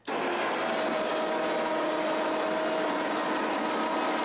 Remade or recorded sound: recorded